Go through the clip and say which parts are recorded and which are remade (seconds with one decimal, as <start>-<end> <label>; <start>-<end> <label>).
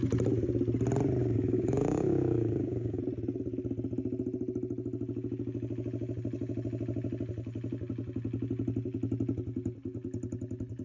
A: 0.0-1.2 recorded; 1.2-3.0 remade; 3.0-10.8 recorded